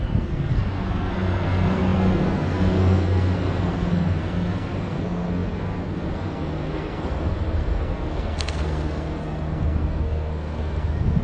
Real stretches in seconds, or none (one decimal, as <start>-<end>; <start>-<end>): none